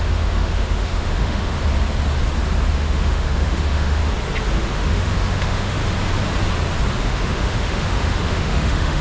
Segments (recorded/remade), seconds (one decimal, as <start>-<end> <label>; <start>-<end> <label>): 0.0-1.6 remade; 1.6-2.7 recorded; 2.7-4.0 remade; 4.0-4.7 recorded; 4.7-5.8 remade; 5.8-7.0 recorded; 7.0-9.0 remade